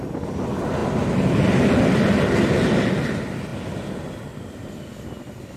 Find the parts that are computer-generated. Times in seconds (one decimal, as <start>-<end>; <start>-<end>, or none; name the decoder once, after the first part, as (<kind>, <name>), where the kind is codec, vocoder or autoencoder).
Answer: none